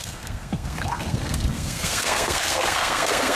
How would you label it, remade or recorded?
remade